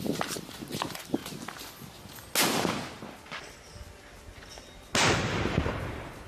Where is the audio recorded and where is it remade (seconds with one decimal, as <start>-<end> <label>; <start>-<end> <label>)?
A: 0.0-1.2 remade; 1.2-5.0 recorded; 5.0-6.3 remade